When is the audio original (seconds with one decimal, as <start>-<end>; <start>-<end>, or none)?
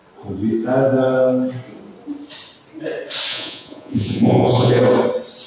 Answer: 0.0-3.3; 4.8-5.5